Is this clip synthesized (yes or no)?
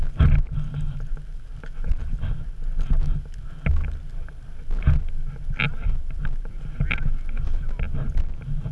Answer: no